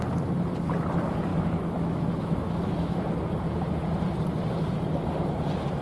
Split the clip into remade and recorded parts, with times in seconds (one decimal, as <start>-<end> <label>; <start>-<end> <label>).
0.0-1.3 recorded; 1.3-3.0 remade; 3.0-5.8 recorded